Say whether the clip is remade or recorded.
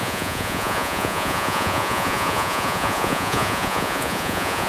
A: remade